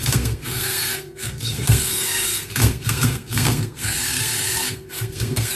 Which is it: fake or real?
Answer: fake